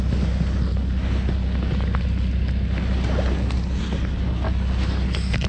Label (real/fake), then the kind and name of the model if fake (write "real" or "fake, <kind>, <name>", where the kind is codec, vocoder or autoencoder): real